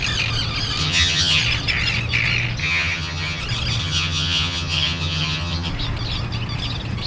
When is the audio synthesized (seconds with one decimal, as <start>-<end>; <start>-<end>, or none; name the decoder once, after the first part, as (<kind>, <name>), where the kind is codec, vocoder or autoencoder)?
0.8-1.4 (vocoder, HiFi-GAN); 2.6-3.4; 3.8-5.7